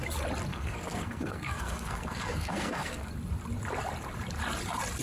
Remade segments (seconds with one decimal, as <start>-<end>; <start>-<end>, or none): 0.5-3.1